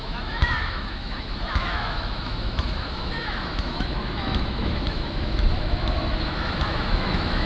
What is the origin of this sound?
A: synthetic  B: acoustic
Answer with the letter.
A